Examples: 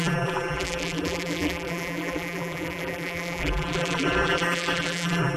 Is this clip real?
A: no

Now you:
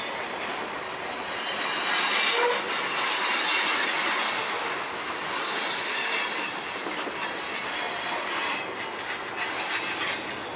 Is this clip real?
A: yes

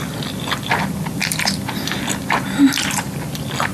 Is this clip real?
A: yes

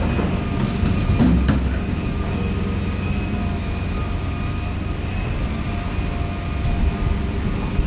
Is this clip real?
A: yes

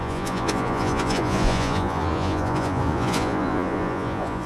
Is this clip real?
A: no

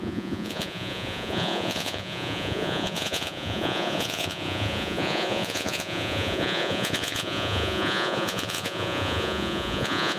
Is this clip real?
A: no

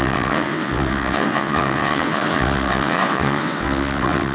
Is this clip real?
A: no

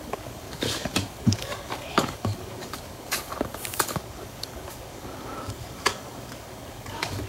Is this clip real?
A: no